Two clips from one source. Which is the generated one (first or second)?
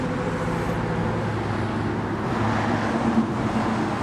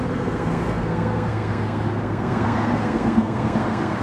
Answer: second